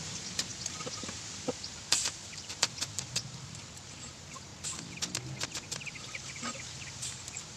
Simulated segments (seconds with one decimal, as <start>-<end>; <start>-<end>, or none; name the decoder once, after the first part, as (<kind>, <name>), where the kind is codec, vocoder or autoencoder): 0.0-4.5 (vocoder, BigVGAN v2); 5.5-7.6